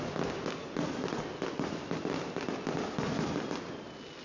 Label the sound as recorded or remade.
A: recorded